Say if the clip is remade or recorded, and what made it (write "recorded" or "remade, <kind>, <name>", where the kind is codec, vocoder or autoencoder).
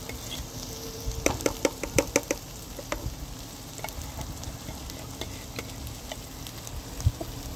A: recorded